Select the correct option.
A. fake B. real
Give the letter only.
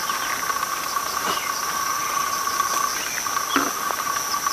B